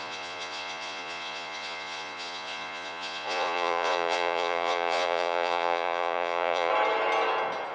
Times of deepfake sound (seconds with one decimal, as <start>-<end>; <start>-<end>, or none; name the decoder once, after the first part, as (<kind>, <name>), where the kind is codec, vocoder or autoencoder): 0.0-6.7 (vocoder, Vocos)